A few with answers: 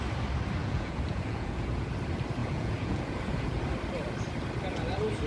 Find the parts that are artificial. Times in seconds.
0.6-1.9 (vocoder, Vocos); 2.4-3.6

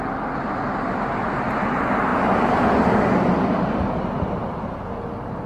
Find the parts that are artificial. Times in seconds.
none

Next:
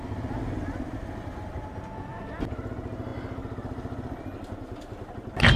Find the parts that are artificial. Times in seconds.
2.1-2.7 (vocoder, BigVGAN v2)

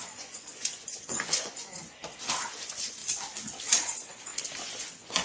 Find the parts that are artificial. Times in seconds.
0.0-2.0 (vocoder, Vocos); 2.6-3.0; 3.7-4.3; 4.8-5.2

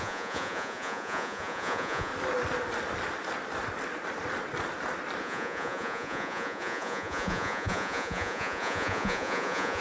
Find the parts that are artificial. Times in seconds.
0.0-2.1 (vocoder, Vocos); 5.2-9.8

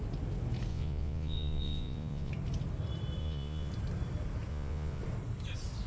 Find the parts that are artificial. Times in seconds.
0.7-2.3 (vocoder, Vocos); 3.2-3.7; 4.5-5.0

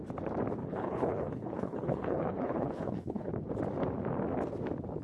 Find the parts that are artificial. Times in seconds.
0.6-3.3 (codec, HILCodec)

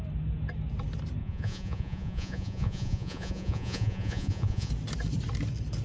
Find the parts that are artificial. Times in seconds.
1.2-4.7 (vocoder, Vocos)